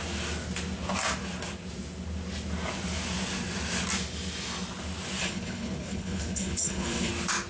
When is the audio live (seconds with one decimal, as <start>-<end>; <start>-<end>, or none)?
0.0-5.2; 7.1-7.5